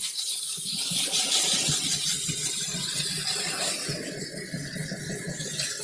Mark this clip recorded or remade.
recorded